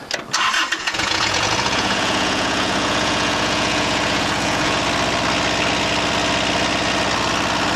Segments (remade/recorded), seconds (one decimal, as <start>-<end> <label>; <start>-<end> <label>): 0.0-0.8 recorded; 0.8-4.8 remade; 4.8-7.8 recorded